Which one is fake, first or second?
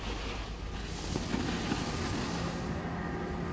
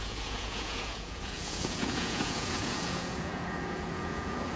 second